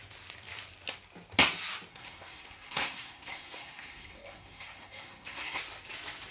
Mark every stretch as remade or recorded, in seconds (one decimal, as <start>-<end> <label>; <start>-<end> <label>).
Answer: 0.0-1.9 recorded; 1.9-5.6 remade; 5.6-6.3 recorded